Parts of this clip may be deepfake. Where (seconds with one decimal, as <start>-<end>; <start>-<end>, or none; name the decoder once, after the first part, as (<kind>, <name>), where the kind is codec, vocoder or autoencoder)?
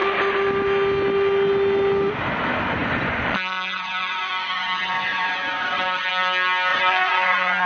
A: 2.8-6.1 (vocoder, Vocos); 6.7-7.7